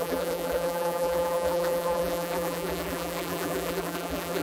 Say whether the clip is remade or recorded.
remade